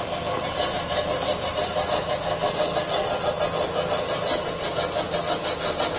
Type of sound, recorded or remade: recorded